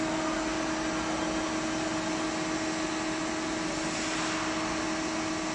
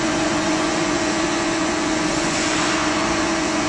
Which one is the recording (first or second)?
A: first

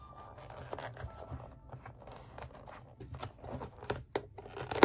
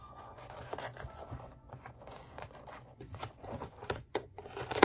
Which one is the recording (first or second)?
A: first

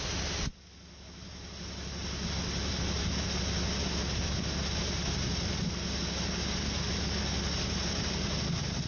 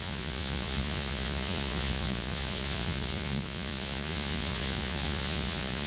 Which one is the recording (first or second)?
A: first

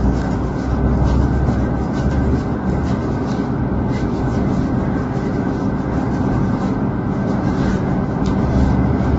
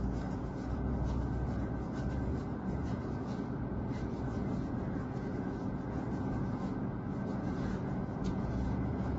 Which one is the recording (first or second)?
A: first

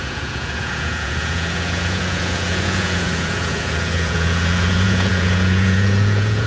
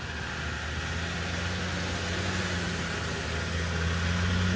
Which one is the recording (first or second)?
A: second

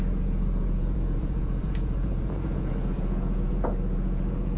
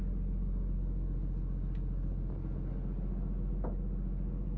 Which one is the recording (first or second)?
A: second